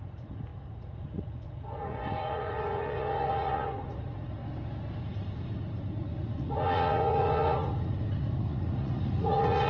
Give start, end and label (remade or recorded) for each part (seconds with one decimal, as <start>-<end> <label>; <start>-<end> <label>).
0.0-4.4 remade; 4.4-5.0 recorded; 5.0-9.7 remade